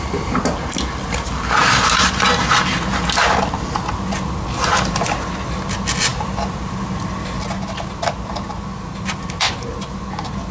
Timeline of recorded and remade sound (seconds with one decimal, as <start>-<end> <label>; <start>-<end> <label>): 0.0-10.5 recorded